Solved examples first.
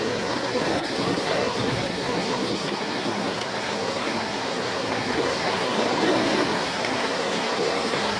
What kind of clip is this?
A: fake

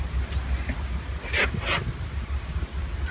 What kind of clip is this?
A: real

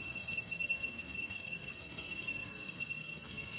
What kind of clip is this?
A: fake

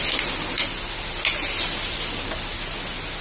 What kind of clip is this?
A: real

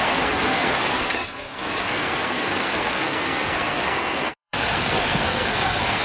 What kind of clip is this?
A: fake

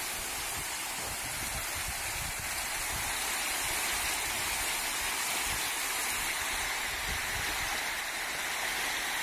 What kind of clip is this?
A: real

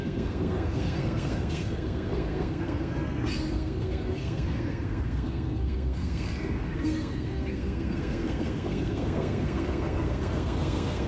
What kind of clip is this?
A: fake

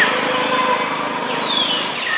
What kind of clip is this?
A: real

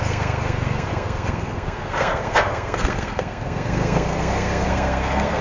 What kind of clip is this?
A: fake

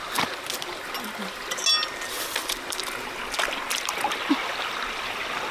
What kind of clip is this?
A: real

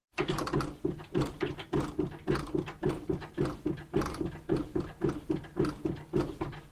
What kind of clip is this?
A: real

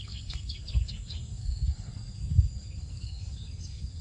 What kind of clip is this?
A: fake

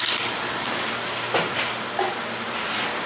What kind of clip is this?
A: real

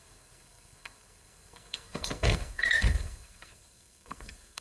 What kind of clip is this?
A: fake